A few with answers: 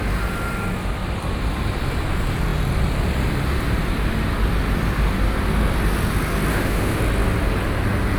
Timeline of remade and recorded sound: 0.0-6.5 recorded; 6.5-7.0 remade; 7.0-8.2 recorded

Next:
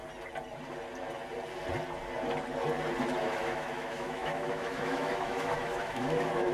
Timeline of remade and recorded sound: 0.0-3.2 recorded; 3.2-6.5 remade

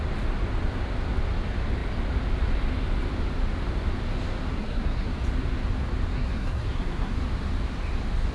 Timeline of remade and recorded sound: 0.0-4.5 recorded; 4.5-5.1 remade; 5.1-6.1 recorded; 6.1-7.2 remade; 7.2-8.3 recorded

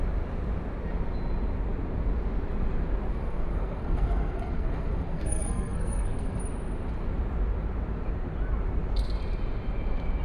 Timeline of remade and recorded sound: 0.0-3.1 recorded; 3.1-6.4 remade; 6.4-10.2 recorded

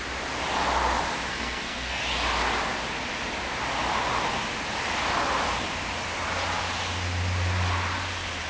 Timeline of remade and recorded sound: 0.0-1.3 recorded; 1.3-2.0 remade; 2.0-8.5 recorded

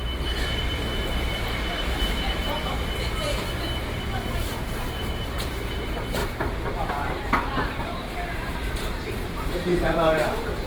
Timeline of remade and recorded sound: 0.0-6.2 remade; 6.2-6.9 recorded; 6.9-10.7 remade